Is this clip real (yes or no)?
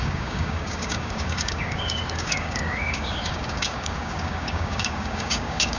no